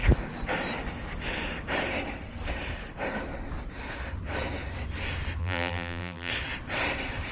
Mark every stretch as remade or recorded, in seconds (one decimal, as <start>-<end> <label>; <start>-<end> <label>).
0.0-5.4 recorded; 5.4-6.3 remade; 6.3-7.3 recorded